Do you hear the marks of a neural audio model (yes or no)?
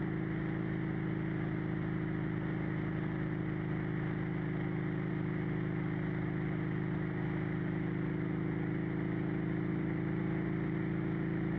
no